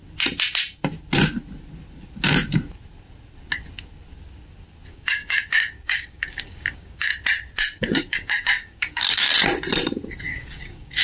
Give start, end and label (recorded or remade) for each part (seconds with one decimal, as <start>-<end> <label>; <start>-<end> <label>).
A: 0.0-4.9 recorded; 4.9-7.1 remade; 7.1-7.8 recorded; 7.8-9.3 remade; 9.3-10.2 recorded; 10.2-11.0 remade